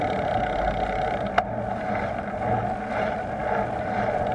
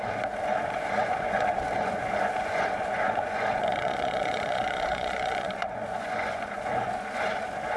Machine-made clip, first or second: second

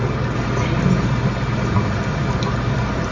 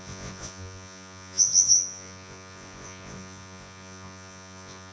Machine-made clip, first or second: second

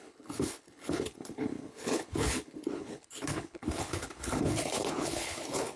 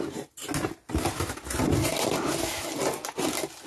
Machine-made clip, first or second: first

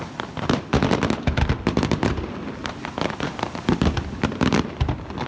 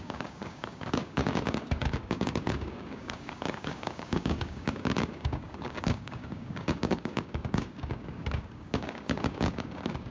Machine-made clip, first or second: second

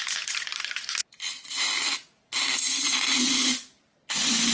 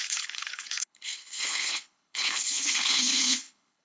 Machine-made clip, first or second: second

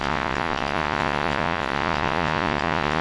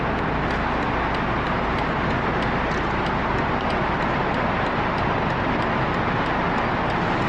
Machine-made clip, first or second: first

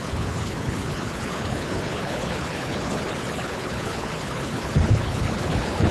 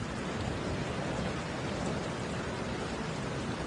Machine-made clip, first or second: first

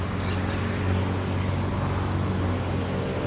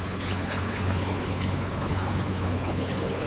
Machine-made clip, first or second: second